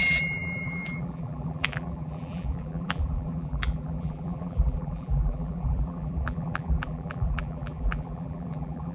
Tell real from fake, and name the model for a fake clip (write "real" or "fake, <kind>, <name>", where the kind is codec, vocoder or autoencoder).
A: fake, vocoder, BigVGAN v2